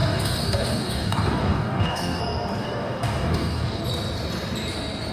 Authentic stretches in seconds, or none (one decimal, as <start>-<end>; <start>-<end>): 2.2-2.6; 3.8-5.1